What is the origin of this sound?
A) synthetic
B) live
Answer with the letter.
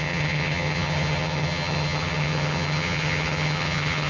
A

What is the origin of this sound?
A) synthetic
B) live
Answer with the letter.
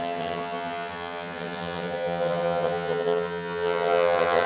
A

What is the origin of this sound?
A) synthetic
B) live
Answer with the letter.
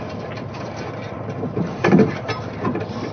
B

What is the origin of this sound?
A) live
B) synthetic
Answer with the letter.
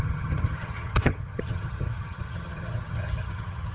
B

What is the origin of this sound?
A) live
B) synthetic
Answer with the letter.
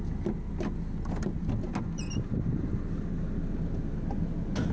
A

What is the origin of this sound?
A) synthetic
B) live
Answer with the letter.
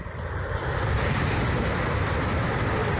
B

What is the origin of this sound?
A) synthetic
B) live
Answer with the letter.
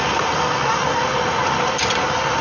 B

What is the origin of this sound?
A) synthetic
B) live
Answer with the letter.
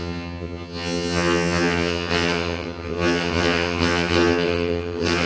A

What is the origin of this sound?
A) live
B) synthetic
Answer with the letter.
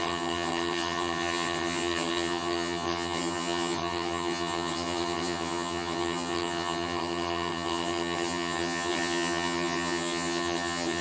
B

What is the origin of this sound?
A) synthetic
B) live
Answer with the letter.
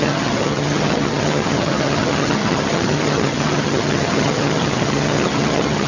A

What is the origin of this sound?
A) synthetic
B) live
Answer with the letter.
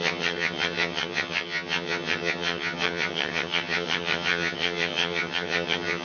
A